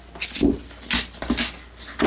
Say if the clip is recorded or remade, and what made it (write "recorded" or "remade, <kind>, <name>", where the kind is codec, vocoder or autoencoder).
recorded